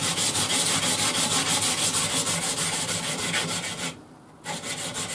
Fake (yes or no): no